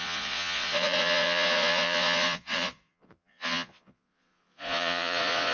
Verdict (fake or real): fake